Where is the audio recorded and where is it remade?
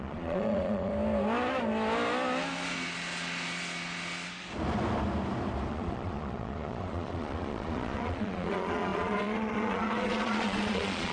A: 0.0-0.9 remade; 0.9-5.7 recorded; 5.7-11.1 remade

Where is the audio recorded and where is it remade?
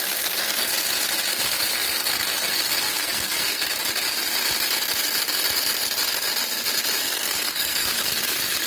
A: 0.0-0.7 remade; 0.7-1.3 recorded; 1.3-3.6 remade; 3.6-7.0 recorded; 7.0-8.7 remade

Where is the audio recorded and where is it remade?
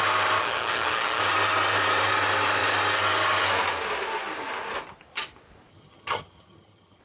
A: 0.0-0.4 recorded; 0.4-1.2 remade; 1.2-5.7 recorded; 5.7-7.0 remade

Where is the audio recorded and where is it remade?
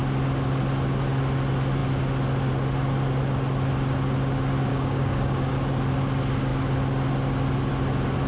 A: 0.0-4.7 recorded; 4.7-5.5 remade; 5.5-8.3 recorded